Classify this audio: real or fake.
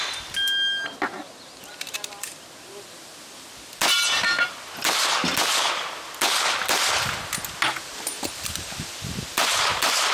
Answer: real